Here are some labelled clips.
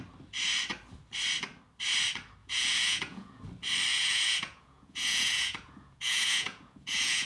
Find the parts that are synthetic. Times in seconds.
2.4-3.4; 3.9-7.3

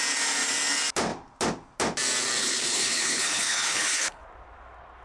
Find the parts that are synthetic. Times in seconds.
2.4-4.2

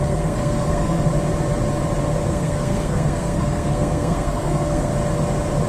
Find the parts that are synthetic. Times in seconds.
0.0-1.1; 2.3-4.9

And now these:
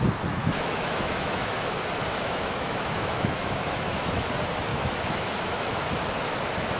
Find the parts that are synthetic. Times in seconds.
0.4-1.5; 2.1-4.3; 4.7-5.8

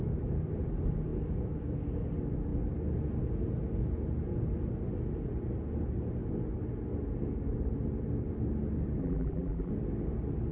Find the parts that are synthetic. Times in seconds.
9.0-9.7

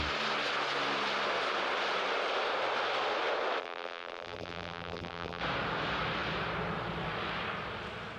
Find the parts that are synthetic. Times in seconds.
3.6-5.4

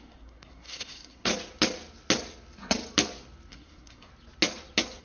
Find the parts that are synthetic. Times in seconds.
0.0-1.3; 3.5-4.1